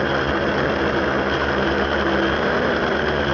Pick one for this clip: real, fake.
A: real